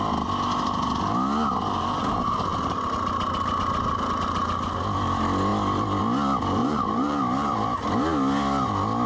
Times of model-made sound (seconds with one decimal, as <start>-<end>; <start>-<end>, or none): 6.6-7.9